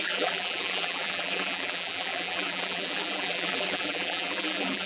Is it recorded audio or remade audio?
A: remade